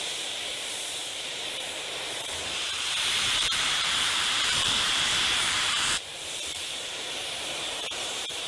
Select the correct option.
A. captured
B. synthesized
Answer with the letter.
B